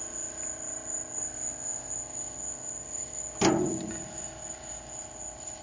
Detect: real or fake real